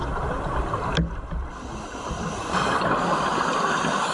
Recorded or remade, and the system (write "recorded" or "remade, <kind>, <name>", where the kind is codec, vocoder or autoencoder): recorded